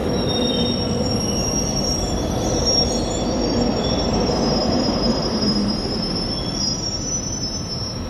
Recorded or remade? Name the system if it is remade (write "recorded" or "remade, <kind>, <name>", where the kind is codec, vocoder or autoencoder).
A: remade, vocoder, BigVGAN v2